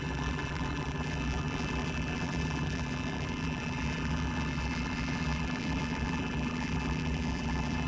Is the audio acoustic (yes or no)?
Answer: no